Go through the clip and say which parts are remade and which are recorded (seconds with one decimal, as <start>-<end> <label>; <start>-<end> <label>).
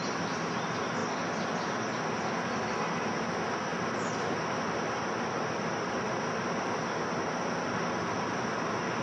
0.0-9.0 recorded